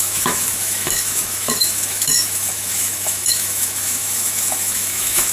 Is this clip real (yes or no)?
no